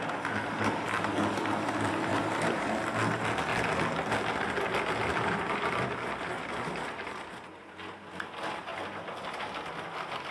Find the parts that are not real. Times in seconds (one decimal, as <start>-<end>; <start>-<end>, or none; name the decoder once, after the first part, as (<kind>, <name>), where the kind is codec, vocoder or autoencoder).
2.1-2.7 (vocoder, BigVGAN v2)